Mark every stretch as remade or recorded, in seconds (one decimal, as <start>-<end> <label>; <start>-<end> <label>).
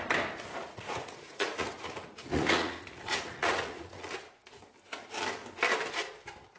0.0-0.6 recorded; 0.6-4.6 remade; 4.6-6.6 recorded